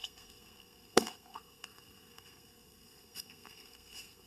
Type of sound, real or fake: fake